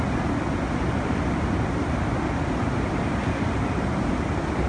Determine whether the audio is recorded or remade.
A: recorded